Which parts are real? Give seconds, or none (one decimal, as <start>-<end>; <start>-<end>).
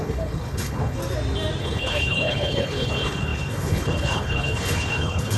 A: 1.0-1.6